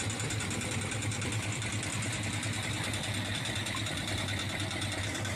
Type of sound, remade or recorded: remade